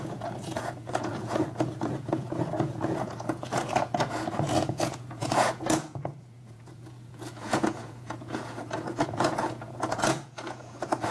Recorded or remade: remade